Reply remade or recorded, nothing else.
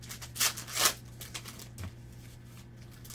recorded